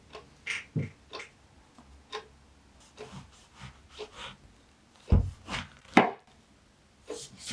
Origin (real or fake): real